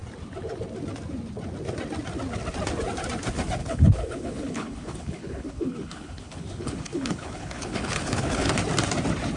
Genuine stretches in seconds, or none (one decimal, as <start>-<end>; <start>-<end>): 0.0-3.6; 8.5-9.4